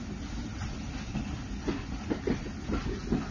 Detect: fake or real real